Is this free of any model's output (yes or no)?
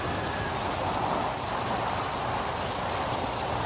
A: yes